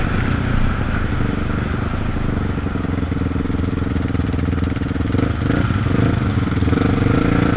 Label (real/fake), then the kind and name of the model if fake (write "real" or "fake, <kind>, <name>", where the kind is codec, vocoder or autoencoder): real